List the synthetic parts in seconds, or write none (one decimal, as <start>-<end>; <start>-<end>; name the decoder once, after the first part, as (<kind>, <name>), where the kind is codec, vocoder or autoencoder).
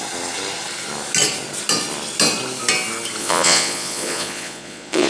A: 3.2-5.1 (vocoder, Vocos)